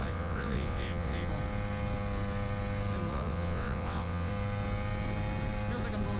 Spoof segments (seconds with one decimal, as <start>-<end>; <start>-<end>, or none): 0.0-1.3; 3.1-4.3